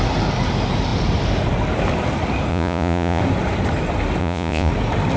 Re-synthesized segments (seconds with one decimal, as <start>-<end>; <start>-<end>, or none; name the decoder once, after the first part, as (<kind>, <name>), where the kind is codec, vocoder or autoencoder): 2.5-3.2 (vocoder, Vocos); 4.2-4.7

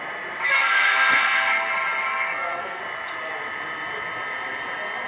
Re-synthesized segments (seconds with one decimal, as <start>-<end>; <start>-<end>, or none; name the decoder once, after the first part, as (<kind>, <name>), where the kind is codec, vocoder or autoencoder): 0.6-1.7 (codec, SNAC); 2.1-2.8

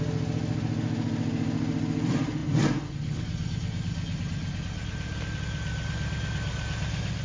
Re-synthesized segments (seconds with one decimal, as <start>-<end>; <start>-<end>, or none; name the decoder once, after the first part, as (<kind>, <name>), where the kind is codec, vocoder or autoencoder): none